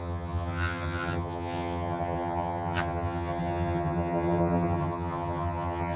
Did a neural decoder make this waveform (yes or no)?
yes